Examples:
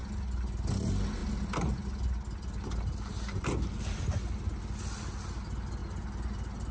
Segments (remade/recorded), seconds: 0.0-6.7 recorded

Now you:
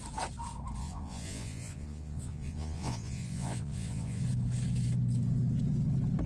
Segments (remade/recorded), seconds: 0.0-0.8 recorded; 0.8-4.2 remade; 4.2-6.3 recorded

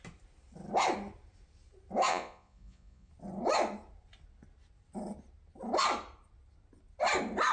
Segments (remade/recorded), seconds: 0.0-2.1 recorded; 2.1-3.1 remade; 3.1-7.5 recorded